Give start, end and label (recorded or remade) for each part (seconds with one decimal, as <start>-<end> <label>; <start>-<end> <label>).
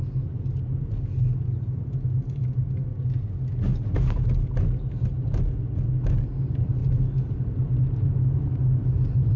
0.0-9.4 recorded